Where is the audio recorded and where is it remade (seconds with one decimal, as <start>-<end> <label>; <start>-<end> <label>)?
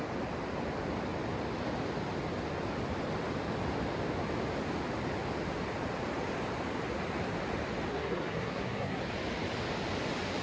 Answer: 0.0-7.9 recorded; 7.9-9.0 remade; 9.0-10.4 recorded